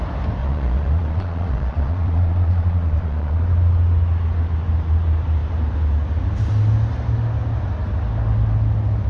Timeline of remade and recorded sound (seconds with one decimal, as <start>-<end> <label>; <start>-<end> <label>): 0.0-0.4 recorded; 0.4-3.4 remade; 3.4-9.1 recorded